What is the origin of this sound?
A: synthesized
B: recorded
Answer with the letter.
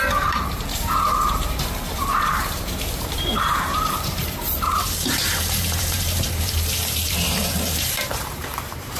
A